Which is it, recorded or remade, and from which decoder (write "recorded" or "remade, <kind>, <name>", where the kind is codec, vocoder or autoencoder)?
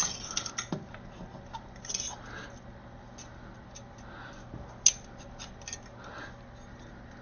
recorded